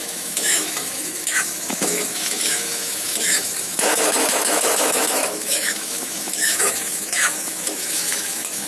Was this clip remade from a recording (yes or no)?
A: yes